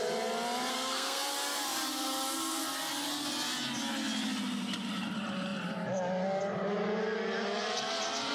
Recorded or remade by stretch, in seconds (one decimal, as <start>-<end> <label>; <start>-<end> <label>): 0.0-0.7 recorded; 0.7-1.3 remade; 1.3-8.3 recorded